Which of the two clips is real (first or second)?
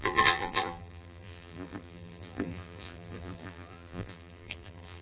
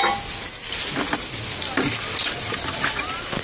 second